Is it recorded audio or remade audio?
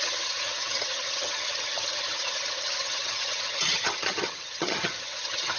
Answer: remade